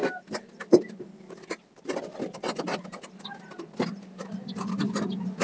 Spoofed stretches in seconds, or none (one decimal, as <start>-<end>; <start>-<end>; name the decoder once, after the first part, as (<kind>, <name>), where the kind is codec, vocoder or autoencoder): none